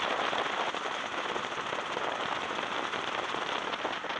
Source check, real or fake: fake